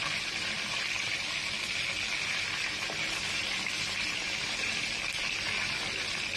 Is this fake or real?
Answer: real